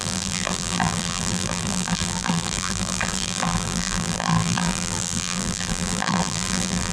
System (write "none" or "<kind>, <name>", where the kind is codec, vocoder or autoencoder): vocoder, BigVGAN v2